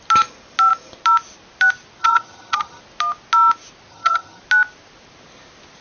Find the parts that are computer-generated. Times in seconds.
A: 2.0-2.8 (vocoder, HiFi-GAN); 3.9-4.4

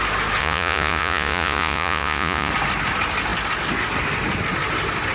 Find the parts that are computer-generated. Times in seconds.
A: 0.4-2.5 (vocoder, Vocos)

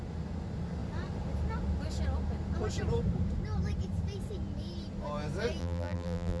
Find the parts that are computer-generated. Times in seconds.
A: 5.6-6.4 (vocoder, BigVGAN v2)

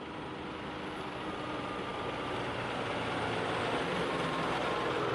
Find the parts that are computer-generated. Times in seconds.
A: 0.0-5.1 (vocoder, BigVGAN v2)

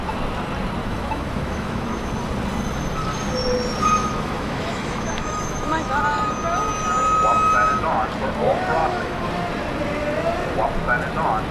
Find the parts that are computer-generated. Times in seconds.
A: 0.8-2.1 (autoencoder, DAC-VAE); 4.0-6.0; 8.8-9.3

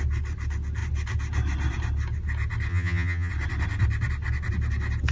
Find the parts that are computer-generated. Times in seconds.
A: 2.7-3.3 (vocoder, HiFi-GAN)

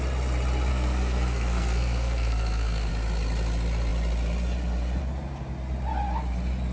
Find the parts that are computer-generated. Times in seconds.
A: 0.7-2.9 (codec, SNAC)

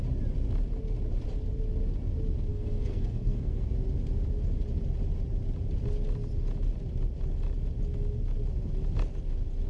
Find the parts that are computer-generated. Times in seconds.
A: 2.5-3.7 (codec, SNAC)